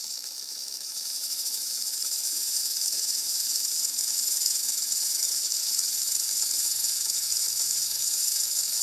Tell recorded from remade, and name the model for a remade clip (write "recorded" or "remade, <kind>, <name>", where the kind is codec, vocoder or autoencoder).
remade, autoencoder, DAC-VAE